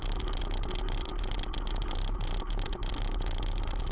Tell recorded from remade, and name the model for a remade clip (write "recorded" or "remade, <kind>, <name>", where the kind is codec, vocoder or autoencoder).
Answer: recorded